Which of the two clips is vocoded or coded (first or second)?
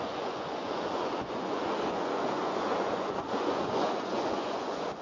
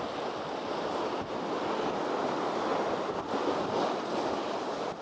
first